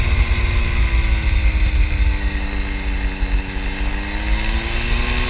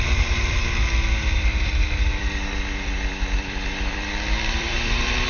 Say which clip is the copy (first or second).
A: second